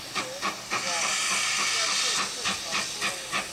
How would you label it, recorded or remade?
recorded